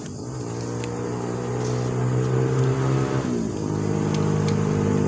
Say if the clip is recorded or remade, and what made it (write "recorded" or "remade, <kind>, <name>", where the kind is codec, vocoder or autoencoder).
recorded